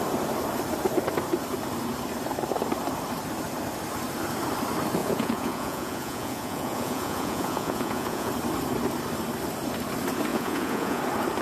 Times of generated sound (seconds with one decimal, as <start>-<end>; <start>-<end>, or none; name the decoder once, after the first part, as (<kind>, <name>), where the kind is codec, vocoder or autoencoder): 5.0-8.3 (vocoder, Vocos); 10.3-11.0